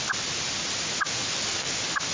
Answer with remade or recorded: recorded